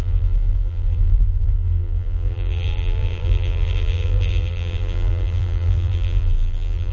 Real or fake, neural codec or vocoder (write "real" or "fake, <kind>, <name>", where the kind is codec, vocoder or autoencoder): fake, vocoder, BigVGAN v2